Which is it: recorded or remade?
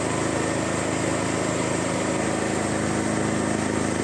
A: recorded